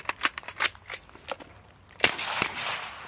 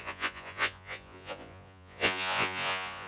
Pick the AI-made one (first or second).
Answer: second